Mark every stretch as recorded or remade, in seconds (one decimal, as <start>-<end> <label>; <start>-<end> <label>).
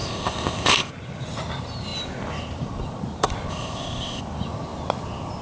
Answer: 0.0-0.9 remade; 0.9-3.5 recorded; 3.5-4.2 remade; 4.2-5.4 recorded